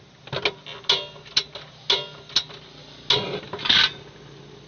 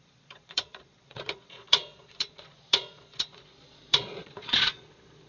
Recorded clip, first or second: first